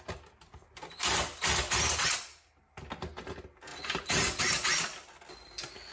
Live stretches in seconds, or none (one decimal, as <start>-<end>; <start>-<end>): 0.0-5.9

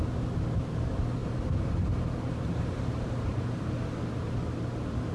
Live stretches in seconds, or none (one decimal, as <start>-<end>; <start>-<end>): 0.0-1.2; 4.3-5.1

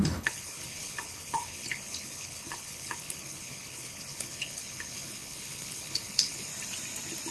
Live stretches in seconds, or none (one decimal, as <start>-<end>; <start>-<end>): 6.5-7.3

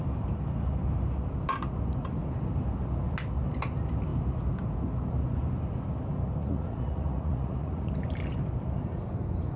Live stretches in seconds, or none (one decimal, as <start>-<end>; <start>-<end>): 0.0-6.4; 7.9-9.6

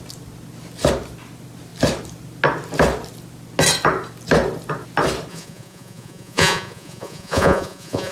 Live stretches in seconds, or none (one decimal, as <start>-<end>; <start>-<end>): 0.0-5.3